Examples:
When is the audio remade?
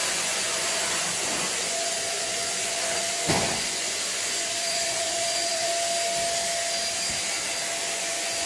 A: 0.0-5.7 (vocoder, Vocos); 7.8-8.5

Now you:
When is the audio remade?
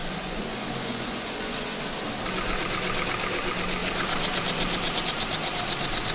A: 0.0-1.8 (vocoder, Vocos)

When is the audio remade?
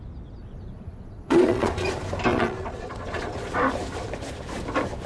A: 0.4-1.9 (vocoder, Vocos); 2.3-3.5